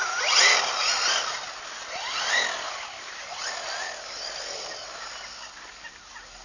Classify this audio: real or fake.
real